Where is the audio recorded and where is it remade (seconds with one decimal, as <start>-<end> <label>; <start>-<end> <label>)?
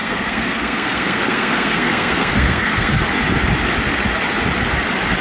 0.0-3.1 remade; 3.1-5.2 recorded